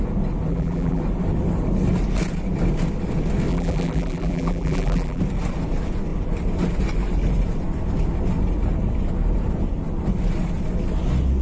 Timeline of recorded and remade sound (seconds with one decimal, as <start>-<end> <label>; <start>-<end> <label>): 0.0-0.5 recorded; 0.5-1.0 remade; 1.0-3.5 recorded; 3.5-5.2 remade; 5.2-11.4 recorded